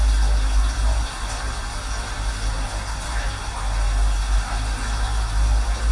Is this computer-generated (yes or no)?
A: no